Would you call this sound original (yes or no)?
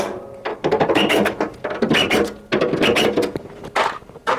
yes